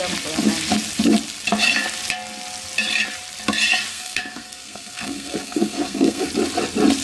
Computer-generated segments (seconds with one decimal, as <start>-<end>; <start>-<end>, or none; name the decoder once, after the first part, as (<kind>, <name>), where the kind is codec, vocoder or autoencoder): 3.9-6.3 (codec, SNAC)